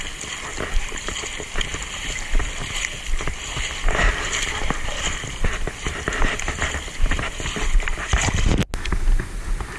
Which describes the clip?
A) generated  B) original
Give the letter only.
B